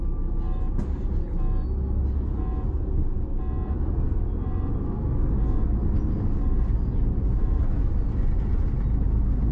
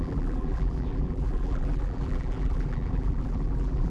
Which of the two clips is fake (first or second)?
second